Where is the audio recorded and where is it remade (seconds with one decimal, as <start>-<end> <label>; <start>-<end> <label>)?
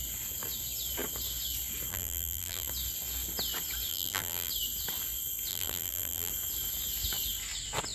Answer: 0.0-1.9 recorded; 1.9-2.7 remade; 2.7-3.9 recorded; 3.9-4.5 remade; 4.5-5.5 recorded; 5.5-6.3 remade; 6.3-7.9 recorded